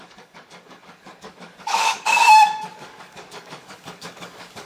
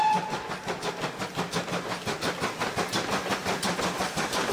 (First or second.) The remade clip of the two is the first